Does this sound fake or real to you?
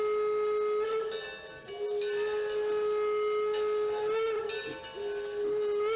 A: real